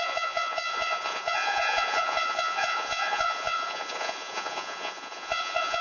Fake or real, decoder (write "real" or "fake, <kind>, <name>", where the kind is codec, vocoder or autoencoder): fake, vocoder, Vocos